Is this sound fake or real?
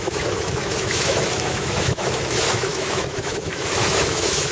fake